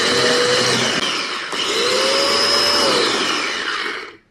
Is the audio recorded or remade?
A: recorded